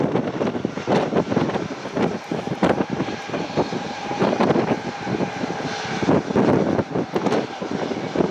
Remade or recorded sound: recorded